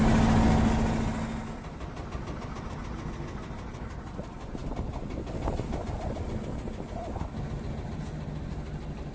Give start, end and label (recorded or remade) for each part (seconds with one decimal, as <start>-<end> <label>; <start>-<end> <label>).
0.0-9.1 recorded